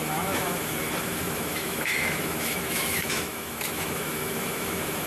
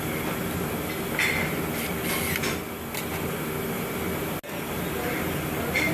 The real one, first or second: second